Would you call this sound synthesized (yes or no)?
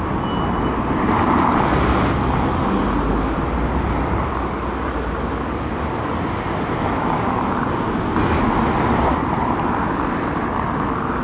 no